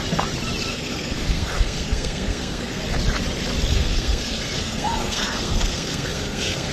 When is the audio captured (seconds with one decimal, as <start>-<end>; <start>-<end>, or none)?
0.0-0.7; 2.8-3.7